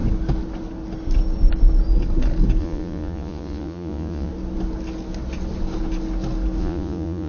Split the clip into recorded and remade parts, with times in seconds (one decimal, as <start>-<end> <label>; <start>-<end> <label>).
0.0-2.6 recorded; 2.6-4.3 remade; 4.3-6.6 recorded; 6.6-7.3 remade